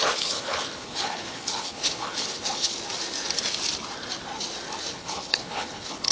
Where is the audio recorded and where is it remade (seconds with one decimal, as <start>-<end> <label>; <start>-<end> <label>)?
0.0-2.7 remade; 2.7-4.9 recorded; 4.9-6.1 remade